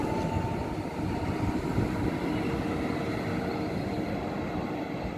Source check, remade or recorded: recorded